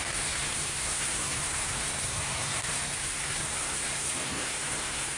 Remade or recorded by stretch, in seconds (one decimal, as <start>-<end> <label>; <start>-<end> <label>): 0.0-5.2 remade